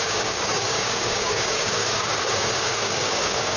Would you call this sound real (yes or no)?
no